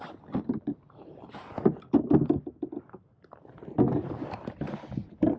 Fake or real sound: real